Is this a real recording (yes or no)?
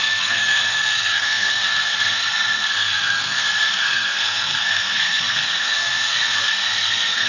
no